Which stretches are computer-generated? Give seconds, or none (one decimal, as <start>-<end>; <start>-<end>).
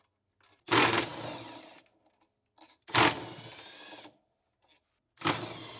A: none